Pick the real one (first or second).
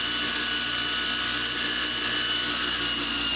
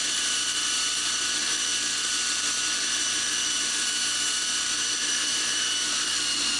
first